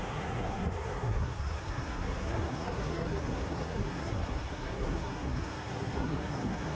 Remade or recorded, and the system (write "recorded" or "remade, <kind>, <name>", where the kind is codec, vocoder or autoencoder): remade, codec, SNAC